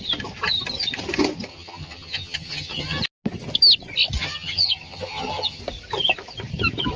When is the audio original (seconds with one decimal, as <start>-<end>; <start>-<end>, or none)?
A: 0.0-1.5; 3.0-4.2; 5.6-7.0